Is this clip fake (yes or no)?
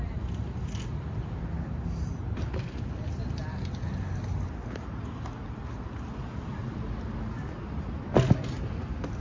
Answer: no